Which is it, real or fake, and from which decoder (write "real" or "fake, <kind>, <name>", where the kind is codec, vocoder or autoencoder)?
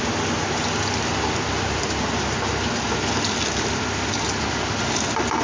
real